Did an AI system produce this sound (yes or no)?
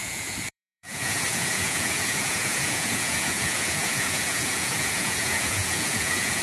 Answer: yes